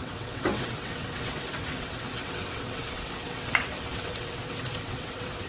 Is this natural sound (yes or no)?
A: no